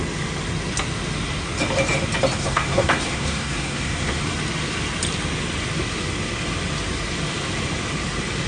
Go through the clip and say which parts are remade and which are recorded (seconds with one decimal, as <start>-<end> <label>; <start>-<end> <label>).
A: 0.0-2.4 recorded; 2.4-4.2 remade; 4.2-8.5 recorded